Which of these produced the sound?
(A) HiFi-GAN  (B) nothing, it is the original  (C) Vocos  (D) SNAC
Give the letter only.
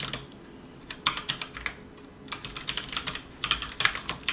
B